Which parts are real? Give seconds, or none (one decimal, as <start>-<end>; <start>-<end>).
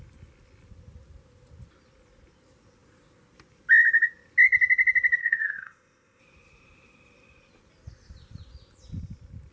0.0-5.2; 6.2-9.5